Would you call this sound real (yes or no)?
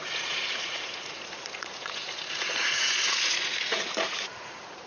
no